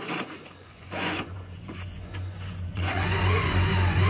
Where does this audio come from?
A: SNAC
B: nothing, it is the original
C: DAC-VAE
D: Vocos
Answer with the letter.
D